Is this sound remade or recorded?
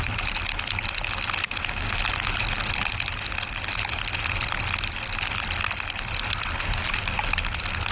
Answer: recorded